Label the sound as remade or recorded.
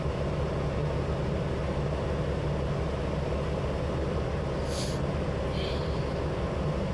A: recorded